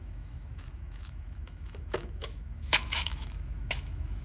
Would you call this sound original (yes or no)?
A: no